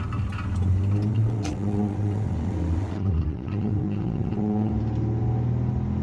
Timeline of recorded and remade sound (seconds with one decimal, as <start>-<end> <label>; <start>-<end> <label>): 0.0-1.1 recorded; 1.1-4.7 remade; 4.7-6.0 recorded